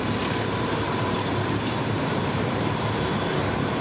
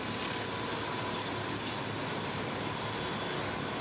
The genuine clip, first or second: second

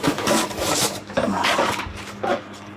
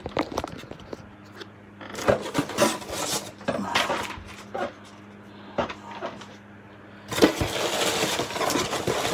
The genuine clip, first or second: second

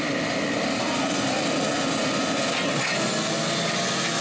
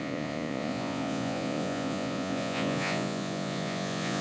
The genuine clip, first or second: first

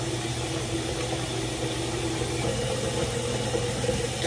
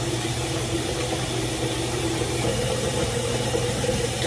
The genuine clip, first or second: first